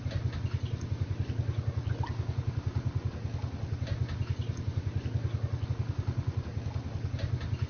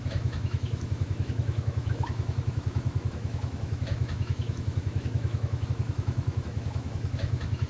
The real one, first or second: first